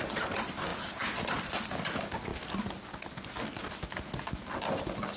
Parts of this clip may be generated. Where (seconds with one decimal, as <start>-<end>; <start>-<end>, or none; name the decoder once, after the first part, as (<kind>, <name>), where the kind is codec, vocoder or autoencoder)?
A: 0.7-1.5 (vocoder, BigVGAN v2)